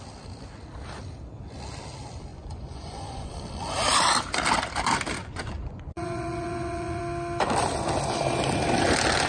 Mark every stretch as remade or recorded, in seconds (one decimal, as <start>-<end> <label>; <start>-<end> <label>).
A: 0.0-2.3 recorded; 2.3-3.3 remade; 3.3-5.2 recorded; 5.2-7.0 remade; 7.0-9.3 recorded